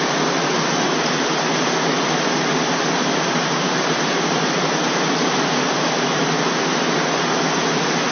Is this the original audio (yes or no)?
yes